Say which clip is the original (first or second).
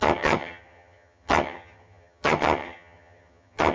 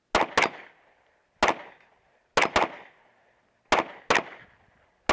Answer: second